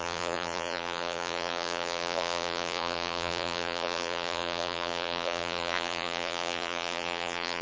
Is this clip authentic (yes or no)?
no